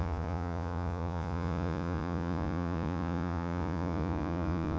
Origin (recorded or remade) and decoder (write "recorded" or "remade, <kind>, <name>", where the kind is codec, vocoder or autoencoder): remade, vocoder, Vocos